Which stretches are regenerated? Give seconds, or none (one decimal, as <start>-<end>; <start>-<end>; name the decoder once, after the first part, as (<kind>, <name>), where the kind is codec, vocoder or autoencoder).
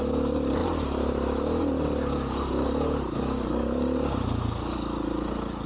none